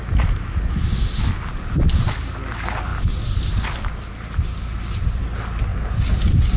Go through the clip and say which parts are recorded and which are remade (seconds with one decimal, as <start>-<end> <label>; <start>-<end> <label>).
0.0-6.6 recorded